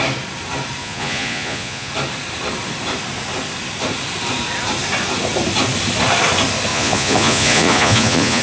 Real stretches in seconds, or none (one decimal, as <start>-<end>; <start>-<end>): 0.0-0.8; 1.9-6.7